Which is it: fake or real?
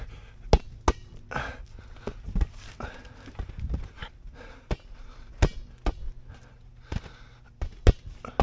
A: real